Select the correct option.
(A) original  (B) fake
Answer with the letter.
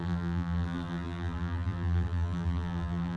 B